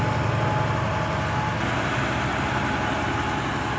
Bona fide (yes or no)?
yes